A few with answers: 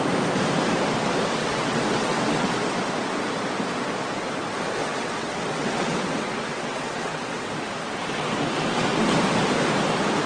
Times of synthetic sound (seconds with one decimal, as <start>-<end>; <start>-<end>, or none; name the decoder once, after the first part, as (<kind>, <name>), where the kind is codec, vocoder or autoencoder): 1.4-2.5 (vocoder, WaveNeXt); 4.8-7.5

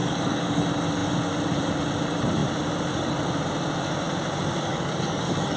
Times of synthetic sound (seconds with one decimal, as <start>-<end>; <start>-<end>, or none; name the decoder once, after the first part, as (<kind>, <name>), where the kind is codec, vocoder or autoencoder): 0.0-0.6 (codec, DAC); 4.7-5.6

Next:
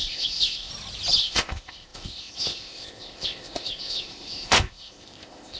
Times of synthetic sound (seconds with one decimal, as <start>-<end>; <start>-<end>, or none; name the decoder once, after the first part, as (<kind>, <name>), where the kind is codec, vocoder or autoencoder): 0.0-0.7 (codec, ZipCodec); 1.2-5.6

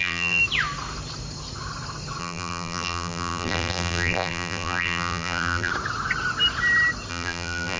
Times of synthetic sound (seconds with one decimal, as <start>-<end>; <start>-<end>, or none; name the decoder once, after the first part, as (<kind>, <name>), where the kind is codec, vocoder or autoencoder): 0.0-0.4 (vocoder, BigVGAN v2); 2.2-5.7; 7.1-7.8